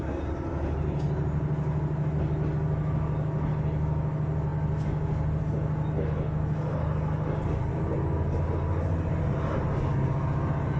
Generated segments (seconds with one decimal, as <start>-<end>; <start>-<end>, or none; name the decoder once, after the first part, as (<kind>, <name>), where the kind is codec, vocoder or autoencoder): none